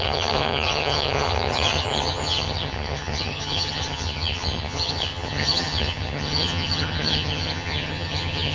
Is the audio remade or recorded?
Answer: remade